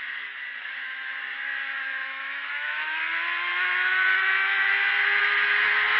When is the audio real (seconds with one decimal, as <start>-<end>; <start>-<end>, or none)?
0.0-0.7; 1.2-1.6; 3.0-6.0